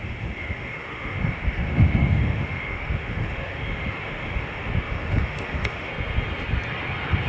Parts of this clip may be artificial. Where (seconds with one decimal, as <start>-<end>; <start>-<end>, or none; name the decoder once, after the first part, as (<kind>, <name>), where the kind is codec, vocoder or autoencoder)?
0.0-5.9 (autoencoder, DAC-VAE)